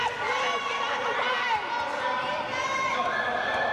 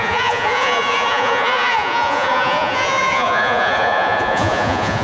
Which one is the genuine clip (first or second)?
first